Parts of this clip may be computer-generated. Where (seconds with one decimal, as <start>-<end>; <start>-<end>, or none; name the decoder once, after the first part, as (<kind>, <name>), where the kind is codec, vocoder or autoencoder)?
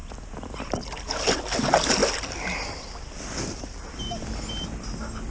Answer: none